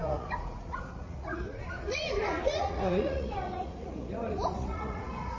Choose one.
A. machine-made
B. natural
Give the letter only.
A